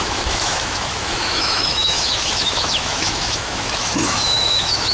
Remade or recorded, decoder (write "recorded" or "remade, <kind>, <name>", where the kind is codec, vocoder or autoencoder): remade, autoencoder, DAC-VAE